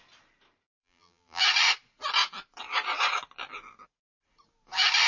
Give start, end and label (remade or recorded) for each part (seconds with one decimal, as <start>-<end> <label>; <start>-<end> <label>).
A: 0.0-0.8 recorded; 0.8-1.4 remade; 1.4-5.1 recorded